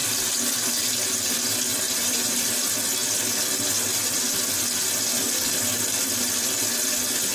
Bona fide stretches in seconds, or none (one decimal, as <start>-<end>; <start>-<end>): 0.7-1.7; 2.5-7.3